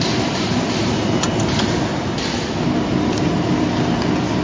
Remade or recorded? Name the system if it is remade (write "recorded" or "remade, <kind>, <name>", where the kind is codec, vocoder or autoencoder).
recorded